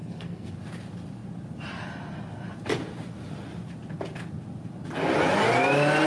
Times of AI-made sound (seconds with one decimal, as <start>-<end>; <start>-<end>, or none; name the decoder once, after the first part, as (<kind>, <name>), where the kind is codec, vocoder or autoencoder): 0.0-0.5 (codec, SNAC)